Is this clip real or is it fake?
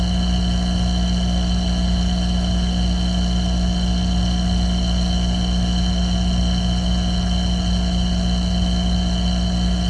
real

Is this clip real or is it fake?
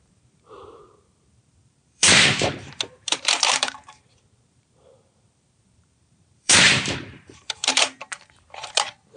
fake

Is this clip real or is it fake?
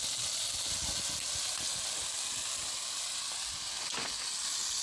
real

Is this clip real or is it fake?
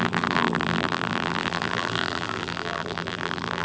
fake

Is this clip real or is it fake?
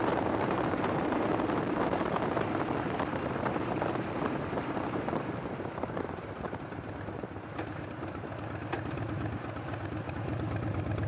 fake